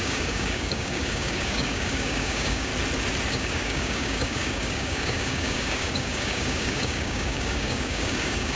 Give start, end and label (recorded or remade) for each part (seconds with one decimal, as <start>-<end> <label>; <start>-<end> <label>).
0.0-2.7 remade; 2.7-3.3 recorded; 3.3-8.6 remade